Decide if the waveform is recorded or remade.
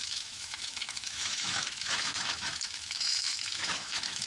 remade